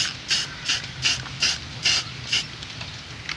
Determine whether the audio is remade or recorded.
recorded